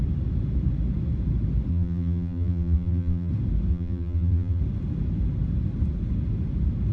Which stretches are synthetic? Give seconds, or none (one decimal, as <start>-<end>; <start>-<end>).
1.7-3.3; 3.7-4.6